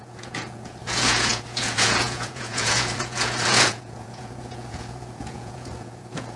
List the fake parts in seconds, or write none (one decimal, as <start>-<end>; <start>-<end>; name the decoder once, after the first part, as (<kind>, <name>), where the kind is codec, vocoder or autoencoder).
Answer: 0.0-6.4 (vocoder, Vocos)